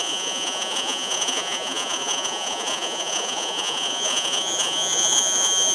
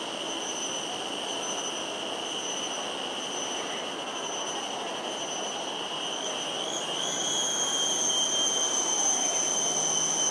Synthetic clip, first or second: first